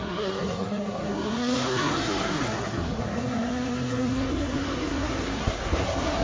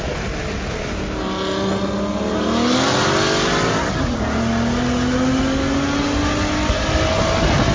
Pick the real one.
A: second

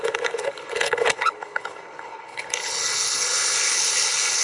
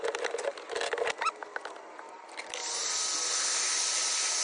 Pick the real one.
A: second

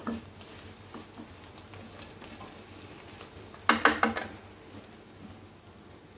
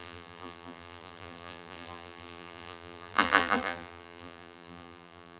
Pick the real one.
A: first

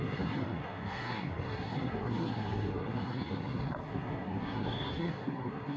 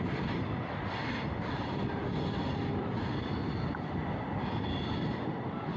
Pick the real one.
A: second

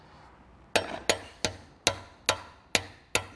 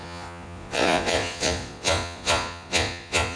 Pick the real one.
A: first